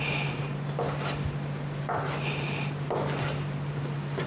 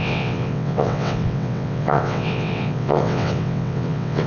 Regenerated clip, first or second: second